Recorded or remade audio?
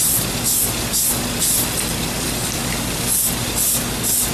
recorded